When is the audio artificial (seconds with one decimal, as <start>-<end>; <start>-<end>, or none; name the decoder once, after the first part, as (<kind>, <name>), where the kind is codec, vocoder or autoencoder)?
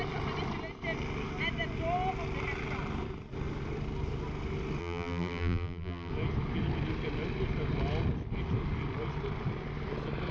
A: 4.8-6.1 (vocoder, BigVGAN v2)